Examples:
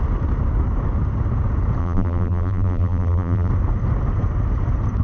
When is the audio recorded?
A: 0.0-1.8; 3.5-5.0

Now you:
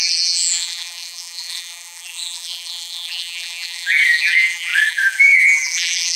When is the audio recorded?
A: none

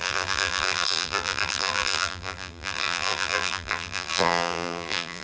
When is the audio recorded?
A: none

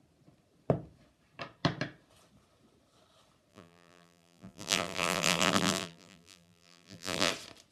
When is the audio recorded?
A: 0.0-3.5; 7.3-7.7

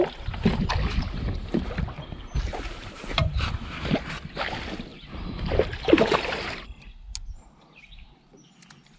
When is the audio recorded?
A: 0.0-2.5; 3.9-9.0